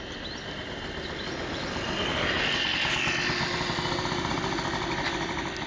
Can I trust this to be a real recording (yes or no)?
yes